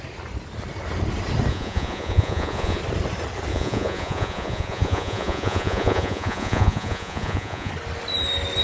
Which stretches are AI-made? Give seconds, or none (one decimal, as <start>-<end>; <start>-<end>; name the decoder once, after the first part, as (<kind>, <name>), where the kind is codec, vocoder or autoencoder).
1.5-2.8 (vocoder, Vocos); 3.5-7.7